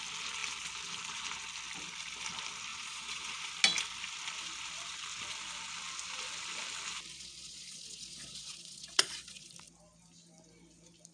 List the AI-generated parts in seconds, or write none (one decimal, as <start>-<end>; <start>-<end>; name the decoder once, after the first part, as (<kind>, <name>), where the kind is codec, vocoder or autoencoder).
2.7-3.5 (vocoder, Vocos); 7.1-9.5